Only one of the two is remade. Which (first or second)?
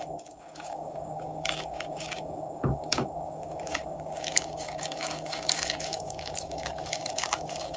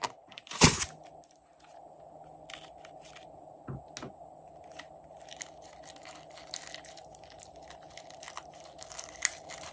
first